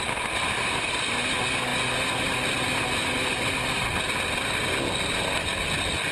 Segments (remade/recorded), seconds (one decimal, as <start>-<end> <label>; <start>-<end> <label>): 0.0-6.1 recorded